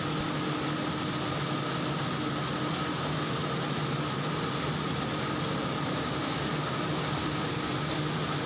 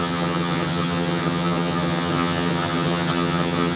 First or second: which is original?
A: first